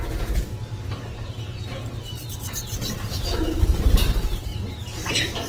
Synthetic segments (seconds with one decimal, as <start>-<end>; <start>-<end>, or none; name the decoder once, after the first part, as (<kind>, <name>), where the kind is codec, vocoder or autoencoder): 0.0-4.5 (vocoder, BigVGAN v2); 5.1-5.5